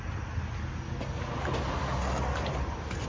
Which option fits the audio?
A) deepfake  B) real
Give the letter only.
B